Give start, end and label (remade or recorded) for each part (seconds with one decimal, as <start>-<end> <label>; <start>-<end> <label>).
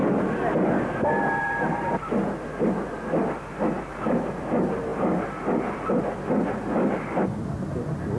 0.0-8.2 recorded